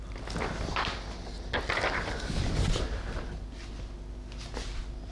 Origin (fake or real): real